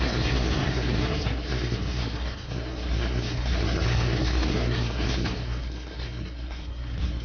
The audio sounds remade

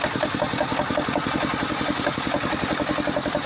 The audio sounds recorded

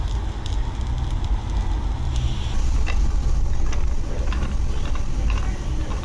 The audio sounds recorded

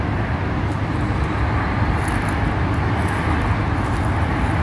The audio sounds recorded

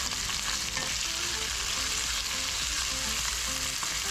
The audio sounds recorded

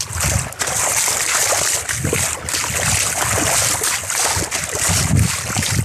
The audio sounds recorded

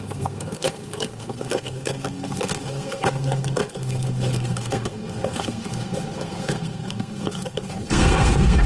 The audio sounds remade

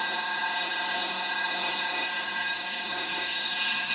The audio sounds remade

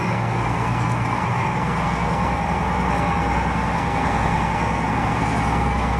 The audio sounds remade